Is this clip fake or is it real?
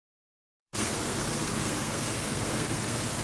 fake